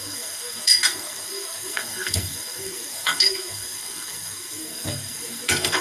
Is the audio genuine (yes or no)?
no